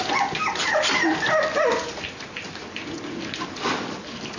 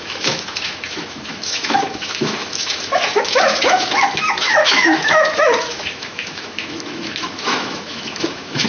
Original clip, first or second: first